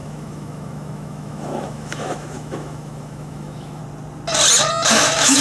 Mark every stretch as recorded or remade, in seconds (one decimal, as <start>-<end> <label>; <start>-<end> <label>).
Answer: 0.0-3.8 remade; 3.8-4.9 recorded; 4.9-5.4 remade